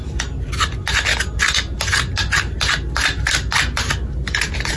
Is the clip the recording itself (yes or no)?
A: yes